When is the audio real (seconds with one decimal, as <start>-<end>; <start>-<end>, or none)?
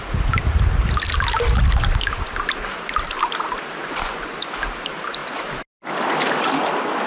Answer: 0.0-3.8; 4.5-7.1